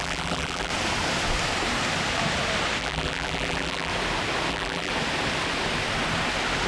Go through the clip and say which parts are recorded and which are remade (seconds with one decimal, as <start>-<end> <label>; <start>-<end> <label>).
0.0-0.7 remade; 0.7-2.8 recorded; 2.8-3.9 remade; 3.9-4.5 recorded; 4.5-4.9 remade; 4.9-6.7 recorded

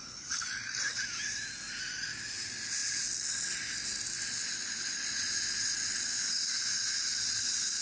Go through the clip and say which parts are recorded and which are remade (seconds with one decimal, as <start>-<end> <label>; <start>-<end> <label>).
0.0-0.4 recorded; 0.4-0.9 remade; 0.9-7.8 recorded